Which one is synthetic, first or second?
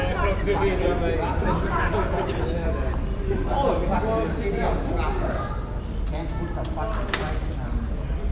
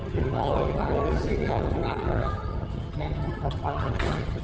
second